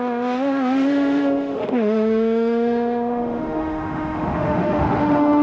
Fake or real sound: fake